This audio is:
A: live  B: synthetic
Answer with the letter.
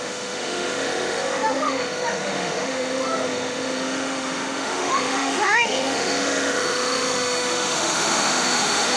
B